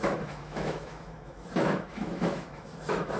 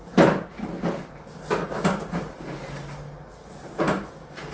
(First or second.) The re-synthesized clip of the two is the first